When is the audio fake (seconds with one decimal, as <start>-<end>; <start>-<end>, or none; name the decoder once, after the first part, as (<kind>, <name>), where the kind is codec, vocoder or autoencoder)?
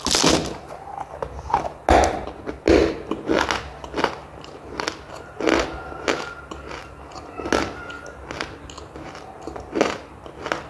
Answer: none